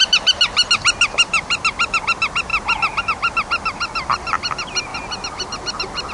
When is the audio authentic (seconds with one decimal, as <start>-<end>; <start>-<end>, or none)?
0.0-6.1